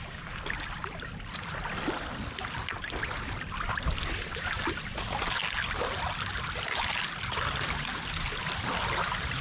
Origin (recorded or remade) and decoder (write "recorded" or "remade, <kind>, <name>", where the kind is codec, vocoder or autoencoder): recorded